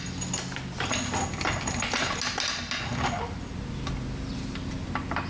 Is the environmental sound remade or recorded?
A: recorded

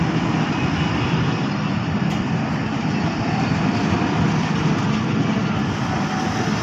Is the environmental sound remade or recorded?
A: recorded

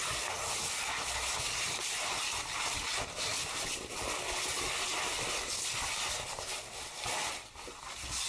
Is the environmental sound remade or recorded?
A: recorded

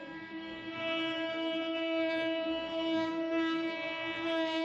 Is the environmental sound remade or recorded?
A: remade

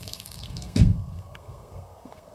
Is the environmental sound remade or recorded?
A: remade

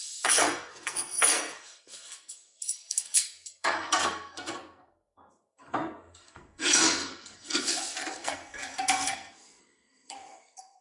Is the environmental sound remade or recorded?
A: remade